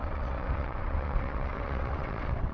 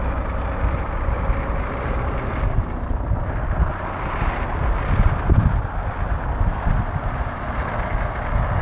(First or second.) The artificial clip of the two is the first